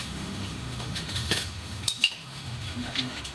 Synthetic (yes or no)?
yes